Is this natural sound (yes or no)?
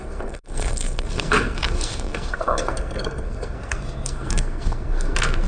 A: no